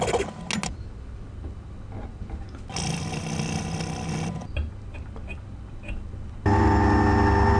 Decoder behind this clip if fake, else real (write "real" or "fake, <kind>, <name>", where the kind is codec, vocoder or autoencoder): real